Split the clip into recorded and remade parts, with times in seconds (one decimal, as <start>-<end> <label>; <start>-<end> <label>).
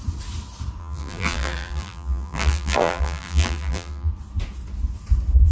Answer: 0.0-0.8 recorded; 0.8-4.1 remade; 4.1-5.5 recorded